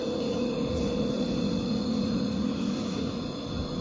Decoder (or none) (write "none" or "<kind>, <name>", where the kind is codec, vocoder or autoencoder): vocoder, Vocos